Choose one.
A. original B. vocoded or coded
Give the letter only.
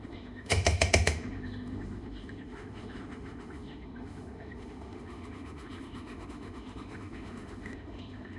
B